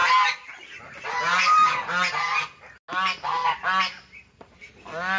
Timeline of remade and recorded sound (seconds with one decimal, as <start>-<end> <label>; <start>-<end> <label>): 0.0-5.2 recorded